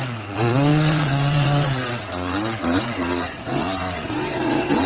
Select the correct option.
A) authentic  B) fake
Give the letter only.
B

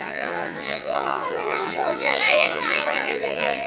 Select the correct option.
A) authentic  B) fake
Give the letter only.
B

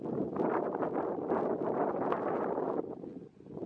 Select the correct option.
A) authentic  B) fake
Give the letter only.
A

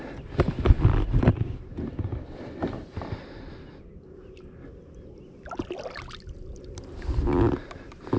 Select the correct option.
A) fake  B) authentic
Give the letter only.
B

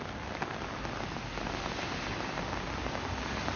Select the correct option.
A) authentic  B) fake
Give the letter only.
A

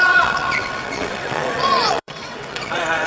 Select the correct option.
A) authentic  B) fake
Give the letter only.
B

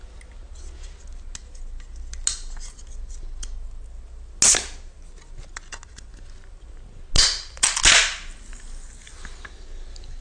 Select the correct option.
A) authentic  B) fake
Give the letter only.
A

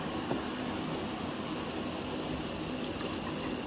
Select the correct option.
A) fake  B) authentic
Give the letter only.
B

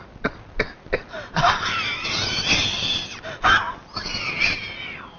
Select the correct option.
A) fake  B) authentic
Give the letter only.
B